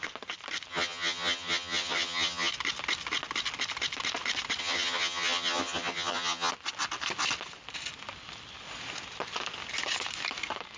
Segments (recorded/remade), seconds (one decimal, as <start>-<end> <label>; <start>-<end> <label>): 0.0-0.7 recorded; 0.7-2.5 remade; 2.5-4.6 recorded; 4.6-6.5 remade; 6.5-10.8 recorded